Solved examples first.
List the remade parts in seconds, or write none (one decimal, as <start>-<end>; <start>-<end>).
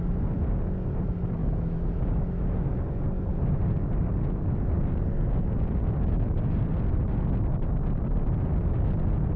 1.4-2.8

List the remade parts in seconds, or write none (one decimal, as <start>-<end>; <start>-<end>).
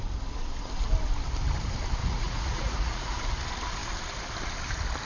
2.0-3.2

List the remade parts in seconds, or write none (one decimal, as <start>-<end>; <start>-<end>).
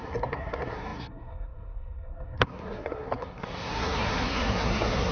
0.0-5.1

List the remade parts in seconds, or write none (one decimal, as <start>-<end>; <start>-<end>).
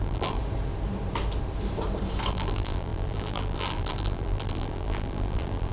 0.0-0.4; 2.3-5.7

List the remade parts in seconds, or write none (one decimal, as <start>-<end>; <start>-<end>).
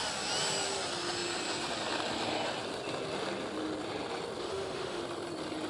4.4-5.0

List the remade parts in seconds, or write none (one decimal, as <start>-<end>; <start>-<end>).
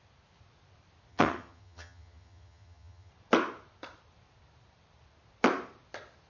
1.1-3.1